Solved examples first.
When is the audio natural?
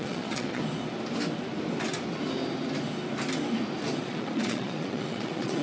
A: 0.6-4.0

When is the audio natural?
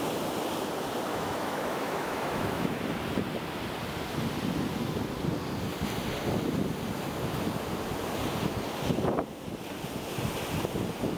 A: 0.0-1.1; 2.8-11.2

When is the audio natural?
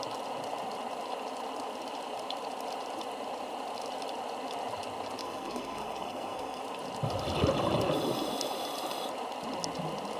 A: 0.0-5.2; 6.6-10.2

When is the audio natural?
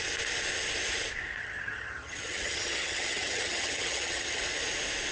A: 0.0-1.4; 4.4-5.1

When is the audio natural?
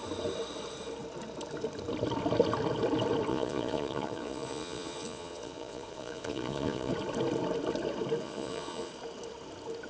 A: 0.0-3.3; 6.9-8.2; 8.9-9.9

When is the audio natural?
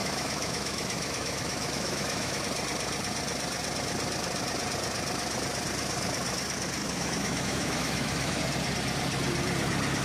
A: 2.4-6.8; 8.4-10.0